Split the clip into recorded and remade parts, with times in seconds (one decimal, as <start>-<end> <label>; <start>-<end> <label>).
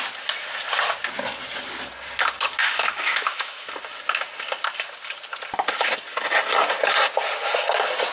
0.0-2.6 recorded; 2.6-3.7 remade; 3.7-8.1 recorded